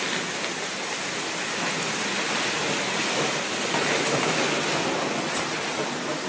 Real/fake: real